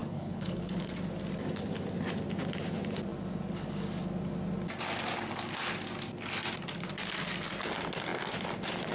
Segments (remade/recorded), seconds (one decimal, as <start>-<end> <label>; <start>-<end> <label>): 0.0-0.9 remade; 0.9-8.9 recorded